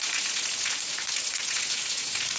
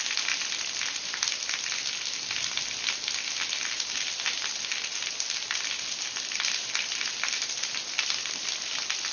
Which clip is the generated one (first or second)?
first